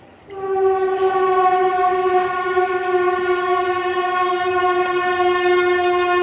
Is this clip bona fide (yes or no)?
yes